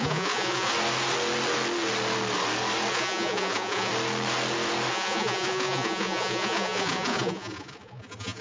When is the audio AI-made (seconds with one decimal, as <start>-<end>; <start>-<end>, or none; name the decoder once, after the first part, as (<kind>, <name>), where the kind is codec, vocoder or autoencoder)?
0.0-0.7 (vocoder, Vocos); 2.9-3.9; 4.9-8.4